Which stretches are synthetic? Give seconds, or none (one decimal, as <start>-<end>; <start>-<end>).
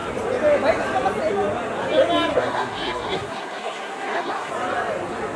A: 2.3-4.5